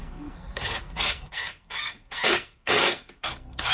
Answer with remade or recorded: remade